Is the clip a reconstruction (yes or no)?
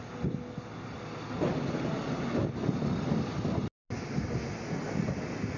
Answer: no